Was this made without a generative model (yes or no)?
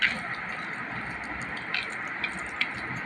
yes